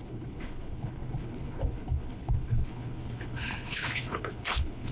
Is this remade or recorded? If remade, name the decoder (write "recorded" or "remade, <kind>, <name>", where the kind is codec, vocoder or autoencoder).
remade, codec, HILCodec